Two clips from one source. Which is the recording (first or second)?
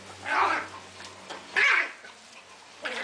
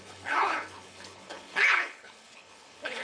first